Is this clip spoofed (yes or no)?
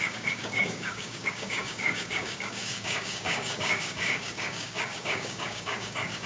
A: yes